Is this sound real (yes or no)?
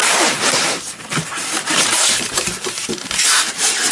no